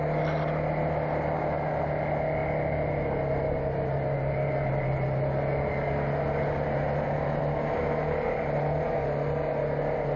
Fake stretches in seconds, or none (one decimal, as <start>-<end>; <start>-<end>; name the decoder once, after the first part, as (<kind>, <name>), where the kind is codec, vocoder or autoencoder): none